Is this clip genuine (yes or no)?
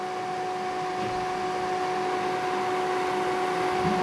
yes